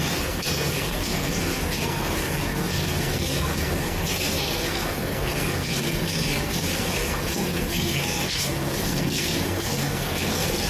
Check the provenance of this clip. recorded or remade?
remade